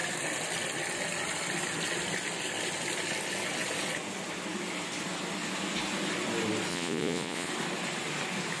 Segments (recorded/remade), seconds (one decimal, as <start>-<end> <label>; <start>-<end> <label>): 0.0-6.7 recorded; 6.7-7.5 remade; 7.5-8.6 recorded